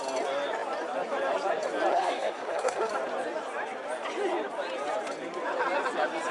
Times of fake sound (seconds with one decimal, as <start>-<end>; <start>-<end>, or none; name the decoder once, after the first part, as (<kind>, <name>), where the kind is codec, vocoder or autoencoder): 1.9-2.9 (codec, SNAC)